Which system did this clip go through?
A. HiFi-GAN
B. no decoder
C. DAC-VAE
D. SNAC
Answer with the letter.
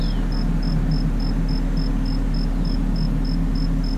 B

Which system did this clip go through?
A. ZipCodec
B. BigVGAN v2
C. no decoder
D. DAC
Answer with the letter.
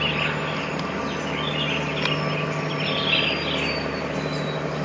C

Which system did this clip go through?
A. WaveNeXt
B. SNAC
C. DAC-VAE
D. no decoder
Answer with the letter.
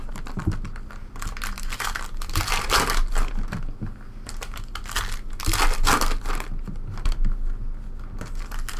D